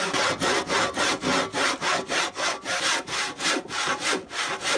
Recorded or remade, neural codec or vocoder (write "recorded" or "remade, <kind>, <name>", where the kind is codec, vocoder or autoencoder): recorded